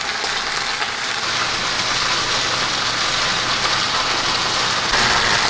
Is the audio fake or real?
real